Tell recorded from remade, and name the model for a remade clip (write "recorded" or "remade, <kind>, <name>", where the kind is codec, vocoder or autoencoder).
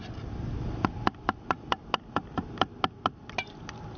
recorded